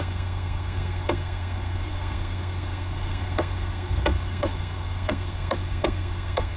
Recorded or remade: remade